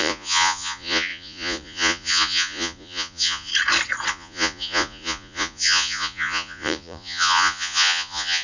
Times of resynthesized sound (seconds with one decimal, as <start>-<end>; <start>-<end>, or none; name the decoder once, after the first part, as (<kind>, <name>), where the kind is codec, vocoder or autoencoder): 0.0-3.5 (vocoder, Vocos); 4.1-8.4